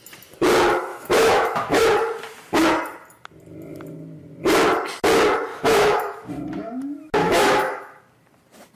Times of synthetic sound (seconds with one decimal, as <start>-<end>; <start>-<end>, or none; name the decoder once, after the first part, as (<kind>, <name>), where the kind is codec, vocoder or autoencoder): 0.9-1.8 (autoencoder, DAC-VAE); 5.5-6.3; 7.2-8.0